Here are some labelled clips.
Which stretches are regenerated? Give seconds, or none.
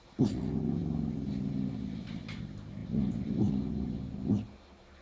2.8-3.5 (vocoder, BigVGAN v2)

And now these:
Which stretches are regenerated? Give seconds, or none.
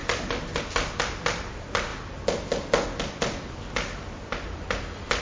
none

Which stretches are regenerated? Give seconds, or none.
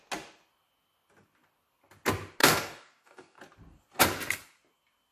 2.4-3.4 (codec, DAC)